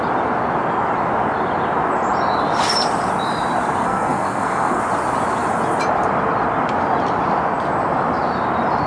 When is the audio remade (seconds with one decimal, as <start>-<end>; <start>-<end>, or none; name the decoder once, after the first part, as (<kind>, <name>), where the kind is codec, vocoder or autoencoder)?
3.8-4.8 (codec, SNAC)